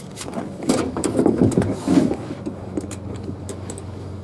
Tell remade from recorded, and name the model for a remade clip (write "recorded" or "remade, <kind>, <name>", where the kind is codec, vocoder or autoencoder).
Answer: remade, codec, DAC